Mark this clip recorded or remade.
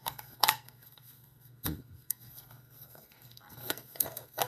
remade